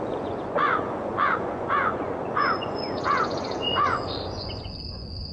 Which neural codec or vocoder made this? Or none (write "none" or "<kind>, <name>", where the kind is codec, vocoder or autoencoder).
vocoder, Vocos